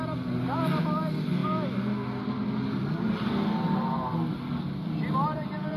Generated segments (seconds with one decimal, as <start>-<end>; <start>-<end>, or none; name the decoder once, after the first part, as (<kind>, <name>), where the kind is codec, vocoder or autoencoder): none